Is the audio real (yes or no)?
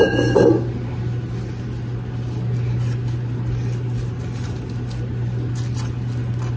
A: yes